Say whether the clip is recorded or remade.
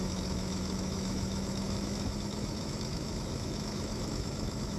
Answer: remade